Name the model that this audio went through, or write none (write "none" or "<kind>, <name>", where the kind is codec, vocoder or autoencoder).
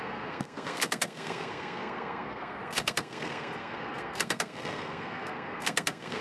codec, SNAC